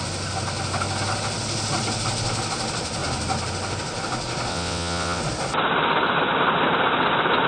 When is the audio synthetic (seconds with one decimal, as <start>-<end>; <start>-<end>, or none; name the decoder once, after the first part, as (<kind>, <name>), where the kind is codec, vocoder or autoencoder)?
4.5-5.2 (vocoder, WaveNeXt)